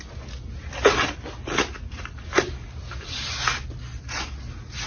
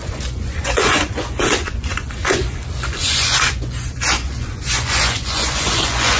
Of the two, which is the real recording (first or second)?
first